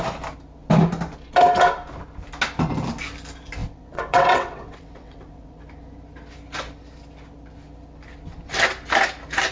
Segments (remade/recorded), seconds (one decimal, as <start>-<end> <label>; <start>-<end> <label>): 0.0-3.6 recorded; 3.6-5.6 remade; 5.6-9.5 recorded